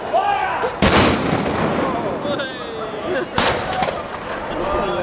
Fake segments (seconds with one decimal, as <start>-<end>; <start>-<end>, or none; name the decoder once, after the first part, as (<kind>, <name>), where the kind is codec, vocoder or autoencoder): none